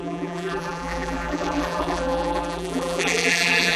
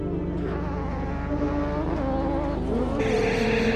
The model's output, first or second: first